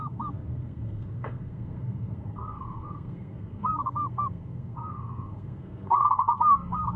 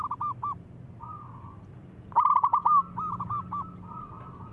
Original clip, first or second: second